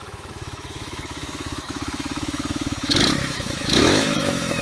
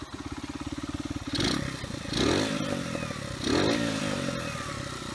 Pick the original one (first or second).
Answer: second